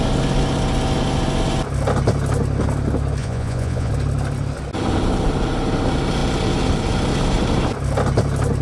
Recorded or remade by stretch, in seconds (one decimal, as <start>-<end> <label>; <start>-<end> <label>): 0.0-3.2 recorded; 3.2-3.9 remade; 3.9-8.6 recorded